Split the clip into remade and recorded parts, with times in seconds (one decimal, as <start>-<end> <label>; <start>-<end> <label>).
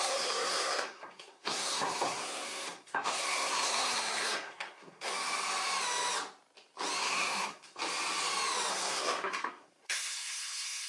0.0-5.1 remade; 5.1-7.0 recorded; 7.0-7.8 remade; 7.8-8.7 recorded; 8.7-10.9 remade